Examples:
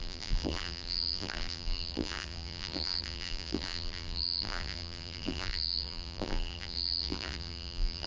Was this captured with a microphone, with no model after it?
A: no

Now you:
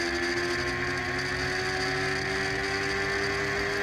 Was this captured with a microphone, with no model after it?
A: yes